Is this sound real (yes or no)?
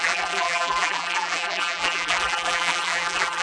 no